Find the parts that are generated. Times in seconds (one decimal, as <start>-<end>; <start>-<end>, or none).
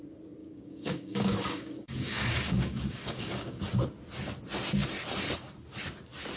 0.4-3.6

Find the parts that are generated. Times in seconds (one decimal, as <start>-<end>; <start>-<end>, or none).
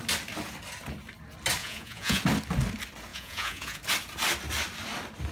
1.6-2.2; 3.1-3.8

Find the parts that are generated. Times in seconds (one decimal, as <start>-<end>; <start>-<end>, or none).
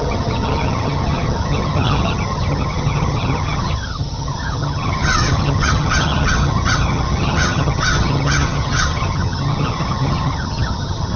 0.0-11.2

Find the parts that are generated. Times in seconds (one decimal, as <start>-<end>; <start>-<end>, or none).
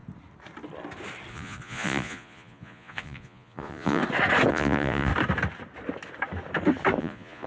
1.3-4.0; 4.5-5.1; 7.0-7.5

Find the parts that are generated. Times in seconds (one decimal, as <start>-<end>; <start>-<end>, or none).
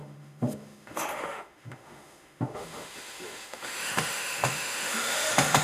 0.0-5.6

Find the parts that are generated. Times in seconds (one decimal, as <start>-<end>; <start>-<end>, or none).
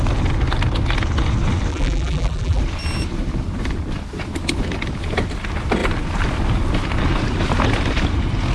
1.7-2.6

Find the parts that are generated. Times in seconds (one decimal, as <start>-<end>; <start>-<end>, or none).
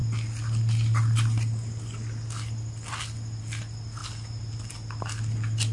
none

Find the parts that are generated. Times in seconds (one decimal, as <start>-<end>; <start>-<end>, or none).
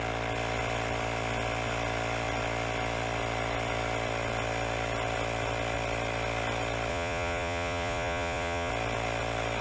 6.9-8.7